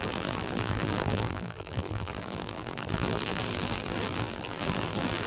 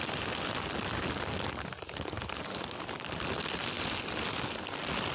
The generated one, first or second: first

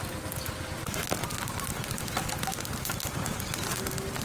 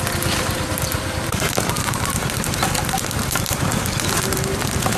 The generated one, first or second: second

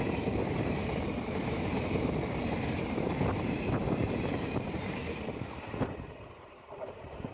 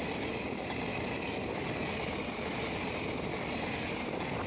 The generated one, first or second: first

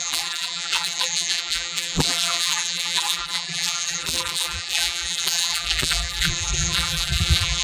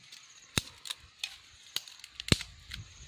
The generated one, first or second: first